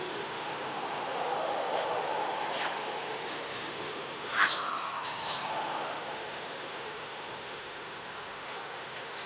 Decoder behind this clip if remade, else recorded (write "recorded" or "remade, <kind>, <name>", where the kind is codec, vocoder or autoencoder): remade, autoencoder, DAC-VAE